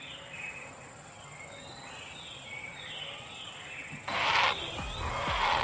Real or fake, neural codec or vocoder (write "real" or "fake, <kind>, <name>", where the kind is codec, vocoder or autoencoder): real